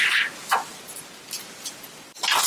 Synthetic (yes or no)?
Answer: no